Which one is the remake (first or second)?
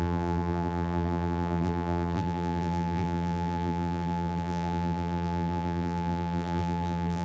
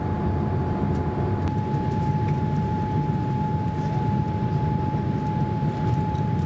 first